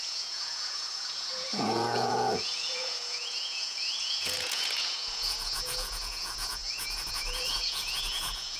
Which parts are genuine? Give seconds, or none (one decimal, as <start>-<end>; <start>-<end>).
none